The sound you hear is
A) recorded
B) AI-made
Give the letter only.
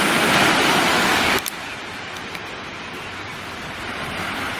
A